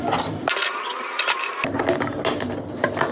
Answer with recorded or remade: recorded